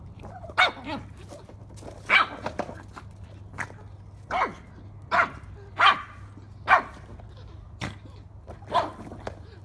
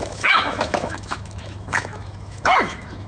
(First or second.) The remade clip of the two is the second